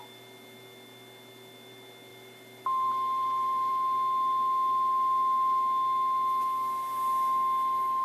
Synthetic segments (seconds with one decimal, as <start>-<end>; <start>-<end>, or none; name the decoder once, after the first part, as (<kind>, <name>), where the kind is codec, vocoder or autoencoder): 2.1-3.7 (vocoder, BigVGAN v2)